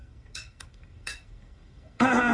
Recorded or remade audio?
remade